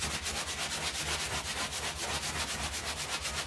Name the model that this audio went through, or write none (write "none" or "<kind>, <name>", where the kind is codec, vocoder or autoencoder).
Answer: none